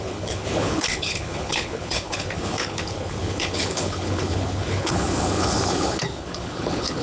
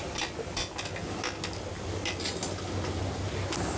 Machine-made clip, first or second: first